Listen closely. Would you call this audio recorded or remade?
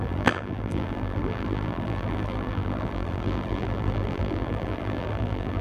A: remade